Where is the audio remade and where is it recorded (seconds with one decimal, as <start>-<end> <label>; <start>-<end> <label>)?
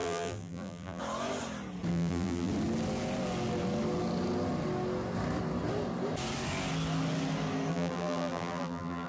0.0-1.0 remade; 1.0-1.9 recorded; 1.9-2.5 remade; 2.5-7.7 recorded; 7.7-9.1 remade